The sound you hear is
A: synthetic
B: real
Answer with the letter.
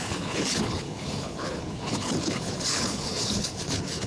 A